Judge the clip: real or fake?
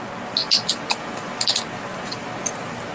real